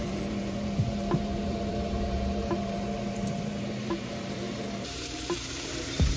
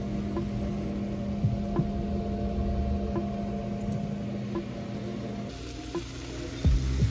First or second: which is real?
second